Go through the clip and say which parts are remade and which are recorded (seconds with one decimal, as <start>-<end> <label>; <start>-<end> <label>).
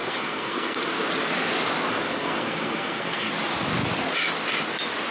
0.0-0.8 remade; 0.8-1.9 recorded; 1.9-3.3 remade; 3.3-5.1 recorded